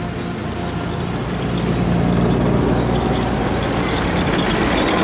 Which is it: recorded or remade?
recorded